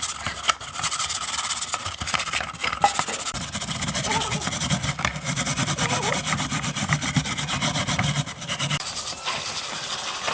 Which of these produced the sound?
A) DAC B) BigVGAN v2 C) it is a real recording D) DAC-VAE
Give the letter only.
B